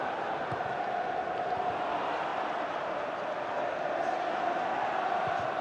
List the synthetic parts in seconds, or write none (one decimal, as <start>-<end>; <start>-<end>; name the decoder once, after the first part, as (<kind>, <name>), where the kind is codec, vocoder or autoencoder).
none